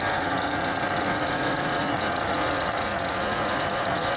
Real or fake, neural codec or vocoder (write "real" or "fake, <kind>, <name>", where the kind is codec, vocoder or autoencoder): fake, vocoder, Vocos